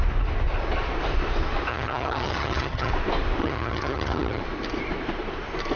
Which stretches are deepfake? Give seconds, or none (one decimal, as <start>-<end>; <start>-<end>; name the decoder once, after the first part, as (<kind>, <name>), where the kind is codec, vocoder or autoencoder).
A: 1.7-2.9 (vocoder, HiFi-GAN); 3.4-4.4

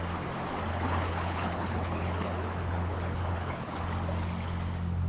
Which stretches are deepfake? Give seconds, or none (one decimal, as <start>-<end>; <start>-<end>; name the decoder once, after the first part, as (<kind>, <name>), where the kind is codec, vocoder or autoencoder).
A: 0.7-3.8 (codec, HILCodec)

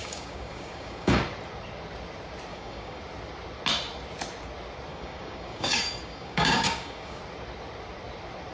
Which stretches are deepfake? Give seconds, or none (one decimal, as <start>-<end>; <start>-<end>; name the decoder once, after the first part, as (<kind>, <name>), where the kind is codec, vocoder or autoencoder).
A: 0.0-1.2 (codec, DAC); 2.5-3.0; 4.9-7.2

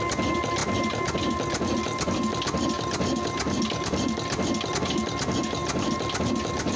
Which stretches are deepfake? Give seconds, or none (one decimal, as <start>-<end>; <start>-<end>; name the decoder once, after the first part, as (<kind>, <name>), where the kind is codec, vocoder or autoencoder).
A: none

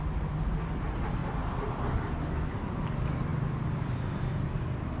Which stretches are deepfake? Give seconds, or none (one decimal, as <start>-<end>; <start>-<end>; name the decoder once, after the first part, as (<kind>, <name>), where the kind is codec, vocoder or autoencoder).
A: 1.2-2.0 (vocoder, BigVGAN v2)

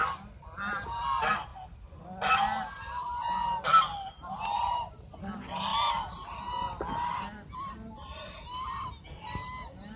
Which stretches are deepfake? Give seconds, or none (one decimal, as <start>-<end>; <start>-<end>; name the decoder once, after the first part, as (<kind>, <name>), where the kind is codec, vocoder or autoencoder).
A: none

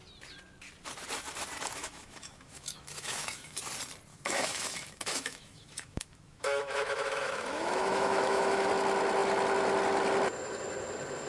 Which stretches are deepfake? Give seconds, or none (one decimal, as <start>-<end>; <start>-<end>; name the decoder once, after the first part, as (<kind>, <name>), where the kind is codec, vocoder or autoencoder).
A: 1.8-3.6 (autoencoder, DAC-VAE); 4.1-8.7

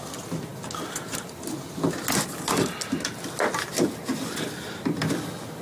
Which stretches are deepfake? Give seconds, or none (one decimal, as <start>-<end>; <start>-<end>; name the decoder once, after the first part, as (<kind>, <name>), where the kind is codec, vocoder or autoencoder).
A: none